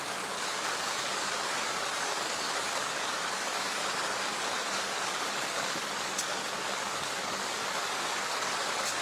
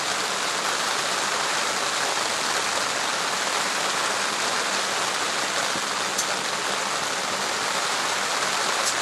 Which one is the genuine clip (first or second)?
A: second